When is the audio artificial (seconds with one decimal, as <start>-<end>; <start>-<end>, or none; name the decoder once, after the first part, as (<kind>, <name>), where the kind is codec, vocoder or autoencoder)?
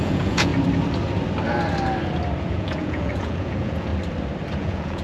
0.0-0.5 (vocoder, Vocos); 2.4-3.9; 4.6-5.0